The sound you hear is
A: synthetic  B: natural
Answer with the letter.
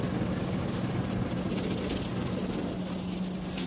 B